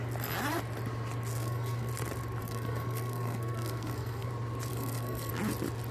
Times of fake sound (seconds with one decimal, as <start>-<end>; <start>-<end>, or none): 1.3-1.9; 2.4-4.3; 4.7-5.3